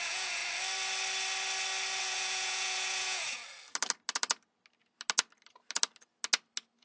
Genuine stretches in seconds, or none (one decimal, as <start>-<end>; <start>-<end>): 0.4-2.0; 3.4-6.8